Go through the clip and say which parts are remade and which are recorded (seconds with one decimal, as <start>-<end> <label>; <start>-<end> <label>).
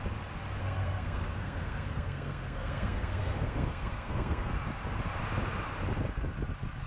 0.0-0.6 recorded; 0.6-4.5 remade; 4.5-6.9 recorded